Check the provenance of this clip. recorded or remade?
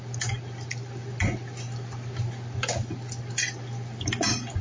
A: recorded